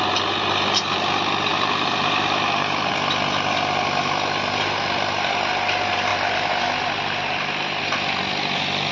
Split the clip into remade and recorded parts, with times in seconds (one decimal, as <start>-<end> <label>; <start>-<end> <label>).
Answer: 0.0-1.5 recorded; 1.5-2.9 remade; 2.9-8.9 recorded